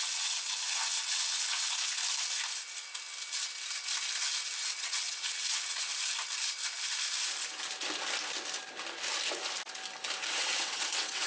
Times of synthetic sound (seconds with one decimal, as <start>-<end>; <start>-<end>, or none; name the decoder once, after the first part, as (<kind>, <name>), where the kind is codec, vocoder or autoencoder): 0.0-2.0 (vocoder, WaveNeXt); 4.8-5.9; 10.3-11.3

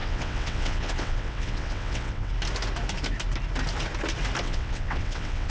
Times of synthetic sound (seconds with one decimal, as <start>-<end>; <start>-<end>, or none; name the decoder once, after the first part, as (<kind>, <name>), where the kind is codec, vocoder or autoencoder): 0.0-2.3 (vocoder, WaveNeXt); 4.4-5.5

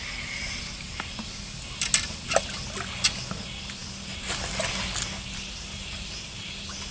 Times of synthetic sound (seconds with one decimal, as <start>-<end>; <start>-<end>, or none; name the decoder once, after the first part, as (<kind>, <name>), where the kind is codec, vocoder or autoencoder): none